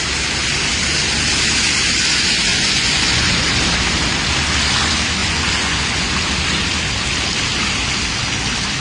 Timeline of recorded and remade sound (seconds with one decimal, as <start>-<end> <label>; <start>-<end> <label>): 0.0-2.5 recorded; 2.5-3.5 remade; 3.5-5.2 recorded; 5.2-6.1 remade; 6.1-8.8 recorded